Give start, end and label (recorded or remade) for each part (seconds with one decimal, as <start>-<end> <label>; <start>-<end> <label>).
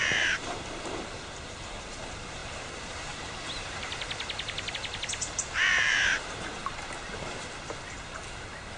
0.0-8.8 remade